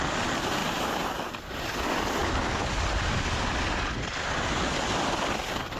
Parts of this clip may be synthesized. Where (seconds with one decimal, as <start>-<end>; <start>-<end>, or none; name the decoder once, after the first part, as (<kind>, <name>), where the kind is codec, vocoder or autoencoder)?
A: 0.6-1.6 (vocoder, BigVGAN v2)